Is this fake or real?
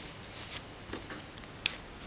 real